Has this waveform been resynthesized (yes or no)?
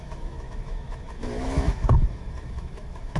yes